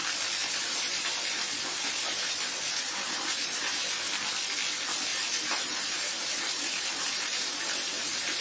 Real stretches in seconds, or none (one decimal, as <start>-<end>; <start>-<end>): 0.0-0.4; 4.1-5.1